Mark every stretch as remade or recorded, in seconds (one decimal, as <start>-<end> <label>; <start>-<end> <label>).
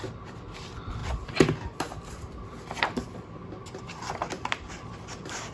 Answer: 0.0-5.5 recorded